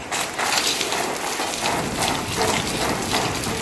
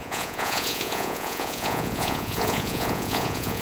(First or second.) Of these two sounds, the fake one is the second